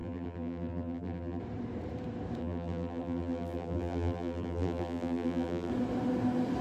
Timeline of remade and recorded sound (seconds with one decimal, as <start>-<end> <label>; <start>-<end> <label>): 0.0-1.4 remade; 1.4-2.4 recorded; 2.4-5.7 remade; 5.7-6.6 recorded